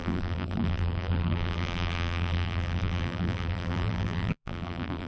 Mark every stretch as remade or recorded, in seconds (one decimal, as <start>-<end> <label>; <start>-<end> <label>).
0.0-5.1 remade